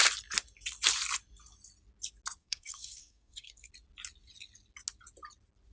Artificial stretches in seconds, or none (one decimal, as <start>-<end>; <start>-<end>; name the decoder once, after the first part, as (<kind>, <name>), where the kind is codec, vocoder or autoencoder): 2.4-3.7 (codec, SNAC)